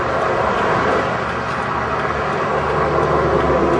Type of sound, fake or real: real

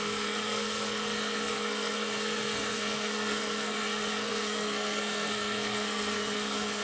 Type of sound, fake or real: fake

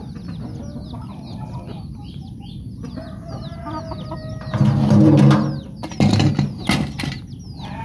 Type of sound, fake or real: real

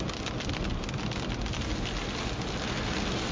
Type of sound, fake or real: real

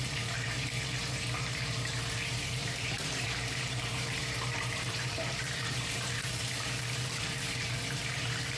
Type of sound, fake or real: fake